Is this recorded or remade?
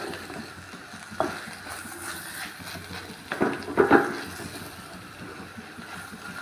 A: recorded